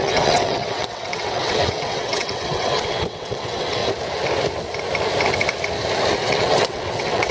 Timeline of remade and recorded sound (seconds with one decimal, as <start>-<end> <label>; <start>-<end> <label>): 0.0-3.8 remade; 3.8-6.2 recorded; 6.2-7.3 remade